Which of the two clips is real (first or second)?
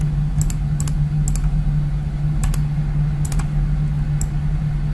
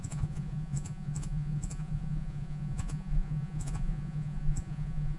first